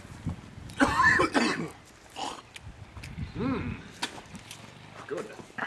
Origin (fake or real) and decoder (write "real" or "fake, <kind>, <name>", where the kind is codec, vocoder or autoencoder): real